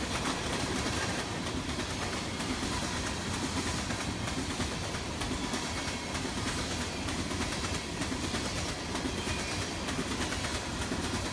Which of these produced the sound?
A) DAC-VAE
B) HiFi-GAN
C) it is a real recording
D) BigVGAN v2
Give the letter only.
C